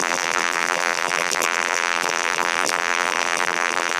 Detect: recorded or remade remade